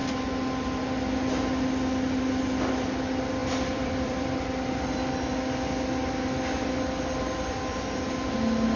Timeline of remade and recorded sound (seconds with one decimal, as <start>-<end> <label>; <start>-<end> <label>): 0.0-3.4 recorded; 3.4-4.4 remade; 4.4-8.8 recorded